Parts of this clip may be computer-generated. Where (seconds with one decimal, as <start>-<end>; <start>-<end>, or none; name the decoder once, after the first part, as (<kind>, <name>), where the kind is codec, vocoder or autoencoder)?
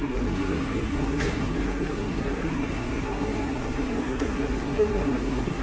0.0-5.6 (codec, SNAC)